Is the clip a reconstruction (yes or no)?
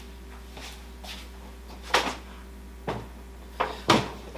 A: yes